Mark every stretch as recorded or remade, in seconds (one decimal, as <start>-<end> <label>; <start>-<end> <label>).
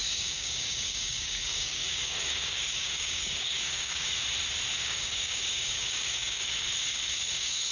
0.0-4.2 remade; 4.2-4.7 recorded; 4.7-7.7 remade